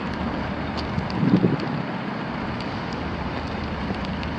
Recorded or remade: recorded